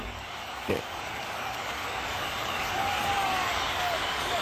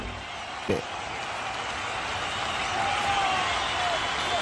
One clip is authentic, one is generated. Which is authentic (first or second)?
second